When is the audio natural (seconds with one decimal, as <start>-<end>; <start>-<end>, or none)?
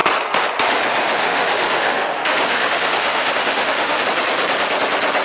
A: 0.0-1.2; 4.0-5.2